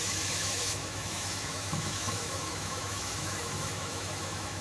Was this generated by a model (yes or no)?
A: yes